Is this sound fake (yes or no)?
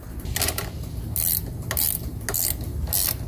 no